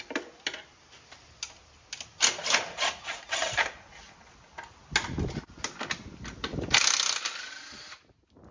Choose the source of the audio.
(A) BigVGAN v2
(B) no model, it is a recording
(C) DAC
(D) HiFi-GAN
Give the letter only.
B